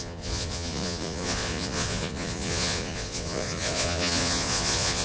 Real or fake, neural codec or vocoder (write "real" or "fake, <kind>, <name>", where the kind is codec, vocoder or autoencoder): fake, vocoder, Vocos